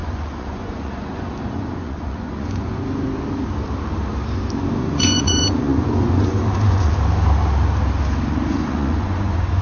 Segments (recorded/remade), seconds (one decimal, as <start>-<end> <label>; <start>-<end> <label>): 0.0-2.8 remade; 2.8-4.8 recorded; 4.8-6.9 remade; 6.9-8.3 recorded; 8.3-9.6 remade